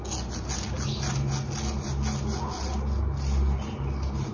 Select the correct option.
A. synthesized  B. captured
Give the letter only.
B